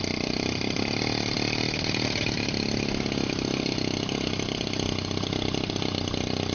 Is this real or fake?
real